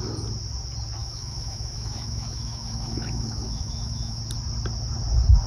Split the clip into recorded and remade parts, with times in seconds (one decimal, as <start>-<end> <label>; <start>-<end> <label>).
0.0-1.0 recorded; 1.0-4.2 remade; 4.2-5.5 recorded